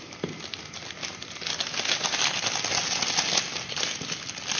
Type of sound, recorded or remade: recorded